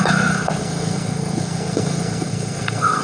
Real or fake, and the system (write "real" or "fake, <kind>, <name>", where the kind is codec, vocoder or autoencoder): fake, codec, SNAC